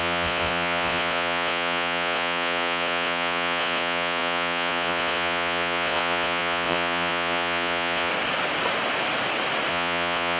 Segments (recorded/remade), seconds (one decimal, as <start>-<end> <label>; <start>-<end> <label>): 0.0-8.1 remade; 8.1-9.7 recorded; 9.7-10.4 remade